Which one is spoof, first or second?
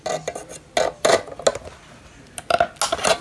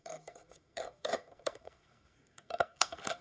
second